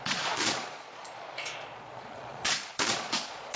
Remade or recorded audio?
remade